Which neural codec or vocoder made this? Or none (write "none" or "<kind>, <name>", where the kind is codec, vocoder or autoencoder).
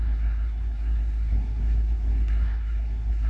codec, SNAC